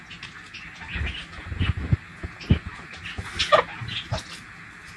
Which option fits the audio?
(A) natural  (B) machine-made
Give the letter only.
A